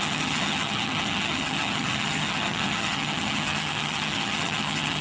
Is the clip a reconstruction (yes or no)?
yes